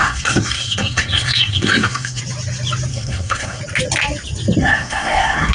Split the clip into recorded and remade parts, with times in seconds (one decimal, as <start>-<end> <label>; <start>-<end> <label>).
0.0-2.2 remade; 2.2-2.9 recorded; 2.9-3.6 remade; 3.6-4.6 recorded; 4.6-5.5 remade